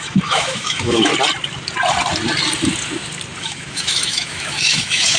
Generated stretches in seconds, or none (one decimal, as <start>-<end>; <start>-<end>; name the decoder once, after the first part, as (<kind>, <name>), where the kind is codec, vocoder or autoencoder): 0.0-1.1 (autoencoder, DAC-VAE); 3.4-5.2